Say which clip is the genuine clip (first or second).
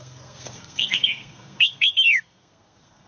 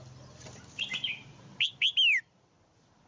second